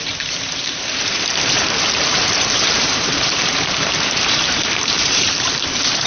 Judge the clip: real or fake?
fake